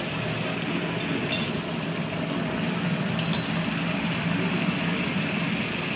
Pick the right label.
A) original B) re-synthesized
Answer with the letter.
A